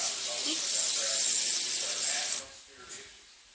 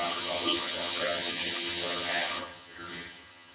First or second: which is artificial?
second